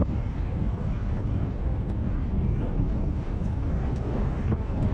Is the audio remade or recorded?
remade